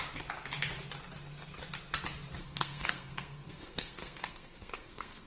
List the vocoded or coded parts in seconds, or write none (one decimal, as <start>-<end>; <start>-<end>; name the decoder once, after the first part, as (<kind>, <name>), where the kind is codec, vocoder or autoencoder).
2.4-5.3 (codec, SNAC)